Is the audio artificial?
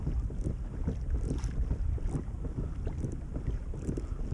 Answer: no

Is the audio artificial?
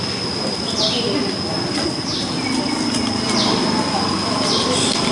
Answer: no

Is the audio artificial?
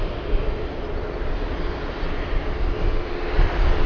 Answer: no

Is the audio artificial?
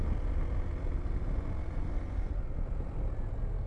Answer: no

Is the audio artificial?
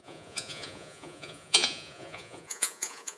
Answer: yes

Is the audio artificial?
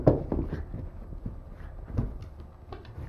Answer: no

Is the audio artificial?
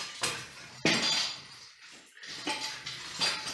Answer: no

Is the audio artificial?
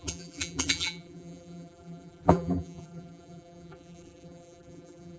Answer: yes